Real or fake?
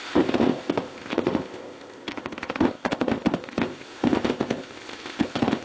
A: fake